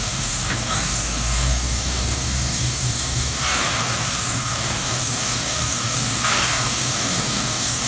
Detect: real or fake fake